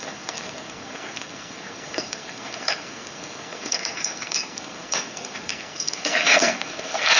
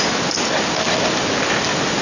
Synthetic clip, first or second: first